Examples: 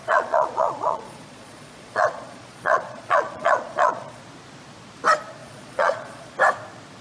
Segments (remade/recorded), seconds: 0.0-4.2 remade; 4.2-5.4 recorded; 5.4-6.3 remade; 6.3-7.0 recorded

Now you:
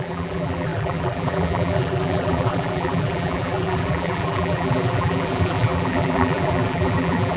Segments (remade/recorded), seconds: 0.0-7.4 remade

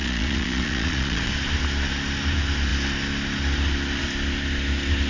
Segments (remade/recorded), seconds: 0.0-1.3 remade; 1.3-5.1 recorded

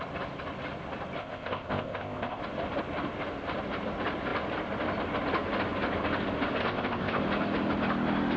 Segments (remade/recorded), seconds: 0.0-1.2 recorded; 1.2-2.4 remade; 2.4-6.6 recorded; 6.6-7.2 remade; 7.2-8.4 recorded

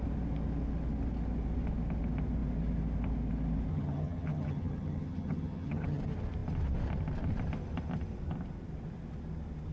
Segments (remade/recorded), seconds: 0.0-3.7 recorded; 3.7-6.0 remade; 6.0-9.7 recorded

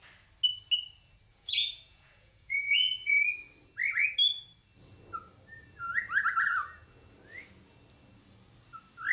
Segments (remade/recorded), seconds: 0.0-1.3 recorded; 1.3-3.2 remade; 3.2-9.1 recorded

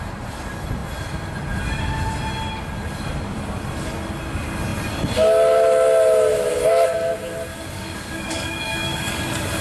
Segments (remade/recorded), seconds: 0.0-7.5 recorded; 7.5-9.2 remade; 9.2-9.6 recorded